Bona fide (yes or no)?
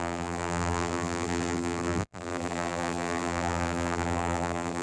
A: no